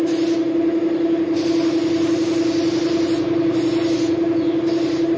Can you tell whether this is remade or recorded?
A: recorded